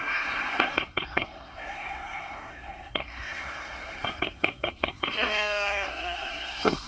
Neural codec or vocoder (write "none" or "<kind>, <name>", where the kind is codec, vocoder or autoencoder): codec, SNAC